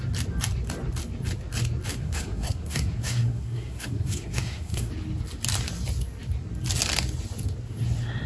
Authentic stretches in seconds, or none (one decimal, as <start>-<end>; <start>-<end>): 0.0-1.9; 4.9-8.3